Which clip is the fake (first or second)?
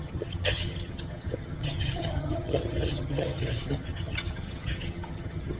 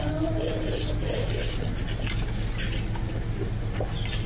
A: first